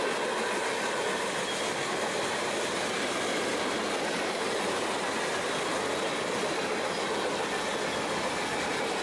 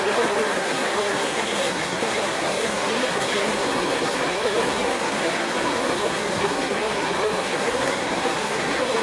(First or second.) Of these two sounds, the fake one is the second